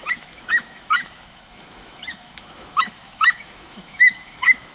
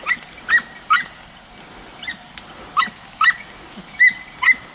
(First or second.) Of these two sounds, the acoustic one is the second